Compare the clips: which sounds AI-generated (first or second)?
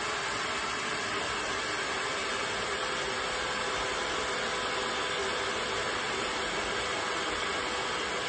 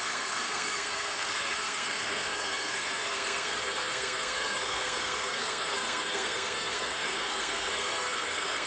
second